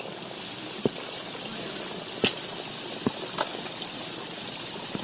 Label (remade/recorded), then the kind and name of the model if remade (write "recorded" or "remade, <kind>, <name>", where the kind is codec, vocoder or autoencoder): recorded